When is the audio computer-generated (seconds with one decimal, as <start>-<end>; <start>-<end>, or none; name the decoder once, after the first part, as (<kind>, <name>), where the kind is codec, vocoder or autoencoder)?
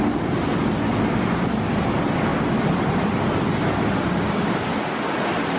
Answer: none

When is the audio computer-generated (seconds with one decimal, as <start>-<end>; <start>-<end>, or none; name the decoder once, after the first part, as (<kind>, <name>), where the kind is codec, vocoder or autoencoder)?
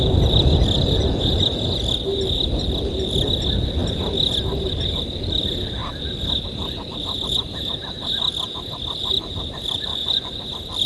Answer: 9.9-10.5 (vocoder, Vocos)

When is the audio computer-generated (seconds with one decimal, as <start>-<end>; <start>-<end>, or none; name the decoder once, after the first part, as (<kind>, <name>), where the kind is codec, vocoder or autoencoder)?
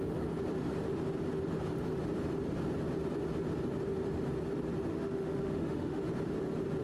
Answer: 4.9-6.0 (autoencoder, DAC-VAE)